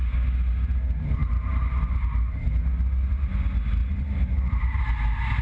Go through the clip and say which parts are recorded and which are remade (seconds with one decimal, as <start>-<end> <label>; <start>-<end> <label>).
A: 0.0-3.8 recorded; 3.8-4.8 remade; 4.8-5.4 recorded